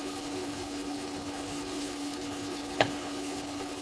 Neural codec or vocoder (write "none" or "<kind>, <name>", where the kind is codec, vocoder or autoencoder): codec, HILCodec